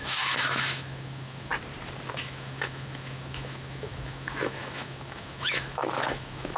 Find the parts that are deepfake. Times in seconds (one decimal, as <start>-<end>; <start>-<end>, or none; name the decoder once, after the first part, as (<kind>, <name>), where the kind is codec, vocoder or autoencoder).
0.0-1.5 (autoencoder, DAC-VAE); 2.1-6.6